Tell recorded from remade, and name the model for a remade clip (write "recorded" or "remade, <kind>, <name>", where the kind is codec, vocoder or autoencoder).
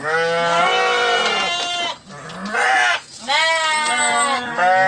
recorded